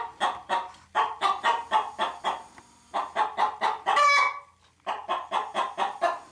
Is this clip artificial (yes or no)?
no